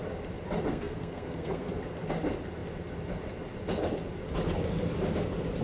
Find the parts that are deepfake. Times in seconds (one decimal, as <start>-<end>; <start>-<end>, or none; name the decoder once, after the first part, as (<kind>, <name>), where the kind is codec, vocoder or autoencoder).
0.7-1.7 (codec, SNAC)